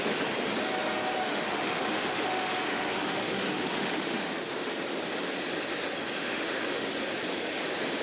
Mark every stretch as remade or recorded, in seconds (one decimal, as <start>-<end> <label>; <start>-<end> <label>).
0.0-1.2 recorded; 1.2-4.7 remade; 4.7-6.2 recorded; 6.2-6.9 remade; 6.9-8.0 recorded